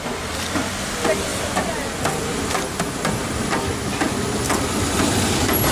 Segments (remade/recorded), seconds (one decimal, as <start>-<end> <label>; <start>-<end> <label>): 0.0-5.7 recorded